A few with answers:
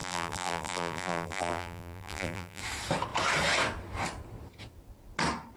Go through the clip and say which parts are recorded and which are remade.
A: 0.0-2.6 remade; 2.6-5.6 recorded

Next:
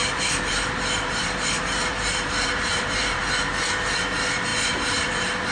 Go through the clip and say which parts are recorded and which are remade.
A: 0.0-3.3 remade; 3.3-4.5 recorded; 4.5-5.1 remade; 5.1-5.5 recorded

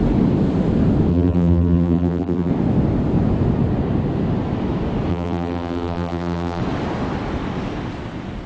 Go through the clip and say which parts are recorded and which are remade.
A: 0.0-1.1 recorded; 1.1-2.5 remade; 2.5-5.1 recorded; 5.1-6.6 remade; 6.6-8.5 recorded

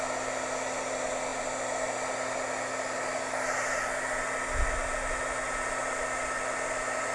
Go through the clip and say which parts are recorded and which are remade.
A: 0.0-7.1 recorded

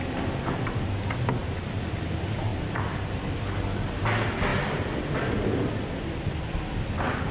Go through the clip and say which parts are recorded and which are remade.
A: 0.0-1.4 recorded; 1.4-2.1 remade; 2.1-4.5 recorded; 4.5-5.7 remade; 5.7-7.3 recorded

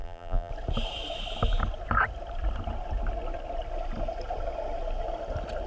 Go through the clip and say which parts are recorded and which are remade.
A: 0.0-0.5 remade; 0.5-5.7 recorded